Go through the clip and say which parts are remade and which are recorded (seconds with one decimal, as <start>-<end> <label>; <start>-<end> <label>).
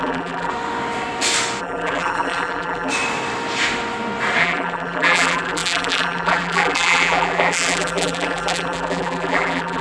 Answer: 0.0-0.5 remade; 0.5-1.6 recorded; 1.6-2.9 remade; 2.9-4.4 recorded; 4.4-9.8 remade